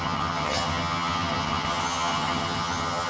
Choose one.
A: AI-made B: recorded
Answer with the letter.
A